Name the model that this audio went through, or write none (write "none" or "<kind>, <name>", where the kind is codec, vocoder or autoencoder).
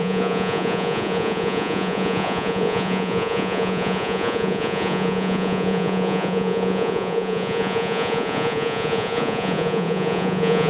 vocoder, Vocos